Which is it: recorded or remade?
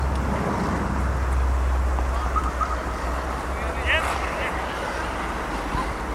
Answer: recorded